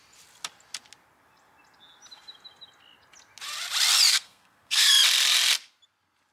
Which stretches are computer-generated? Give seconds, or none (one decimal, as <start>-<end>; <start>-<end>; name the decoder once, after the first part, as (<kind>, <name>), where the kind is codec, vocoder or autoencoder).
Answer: 4.1-4.9 (codec, SNAC)